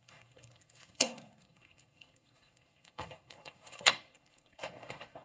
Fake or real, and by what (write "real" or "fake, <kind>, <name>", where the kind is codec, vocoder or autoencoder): fake, codec, SNAC